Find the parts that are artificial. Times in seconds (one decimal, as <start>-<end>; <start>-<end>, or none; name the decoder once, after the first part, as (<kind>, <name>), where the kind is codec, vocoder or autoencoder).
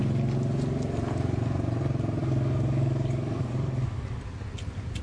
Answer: 2.2-4.2 (codec, DAC)